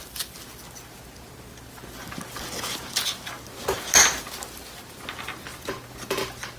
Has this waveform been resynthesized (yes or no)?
no